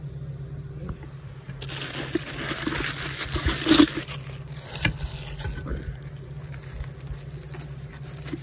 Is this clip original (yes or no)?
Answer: yes